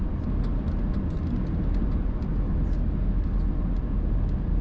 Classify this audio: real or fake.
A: real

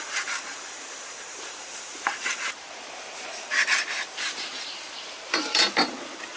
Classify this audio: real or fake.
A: fake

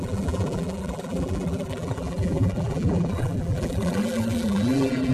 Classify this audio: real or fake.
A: fake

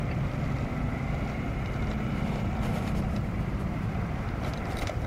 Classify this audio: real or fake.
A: fake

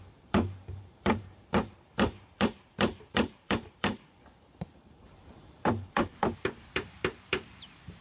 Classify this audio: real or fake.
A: fake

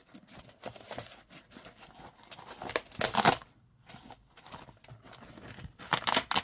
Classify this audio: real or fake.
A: real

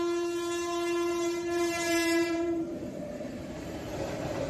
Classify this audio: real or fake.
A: fake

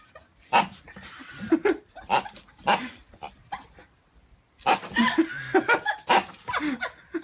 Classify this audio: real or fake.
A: real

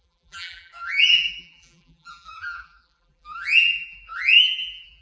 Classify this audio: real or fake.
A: fake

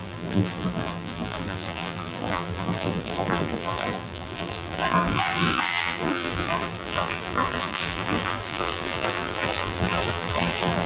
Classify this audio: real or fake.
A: fake